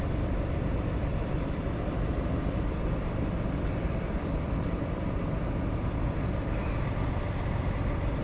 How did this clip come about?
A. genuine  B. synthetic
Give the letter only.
B